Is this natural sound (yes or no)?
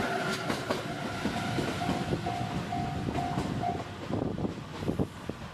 yes